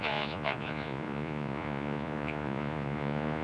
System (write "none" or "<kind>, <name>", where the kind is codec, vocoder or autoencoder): vocoder, Vocos